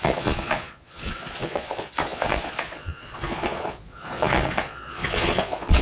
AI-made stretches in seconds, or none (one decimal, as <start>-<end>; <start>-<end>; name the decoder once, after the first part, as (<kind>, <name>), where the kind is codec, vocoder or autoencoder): 0.0-5.8 (vocoder, Vocos)